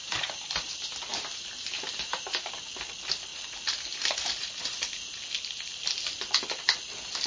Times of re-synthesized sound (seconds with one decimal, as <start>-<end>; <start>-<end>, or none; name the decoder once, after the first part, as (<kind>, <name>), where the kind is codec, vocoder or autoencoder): 0.0-0.7 (vocoder, BigVGAN v2); 1.1-2.5; 3.3-4.8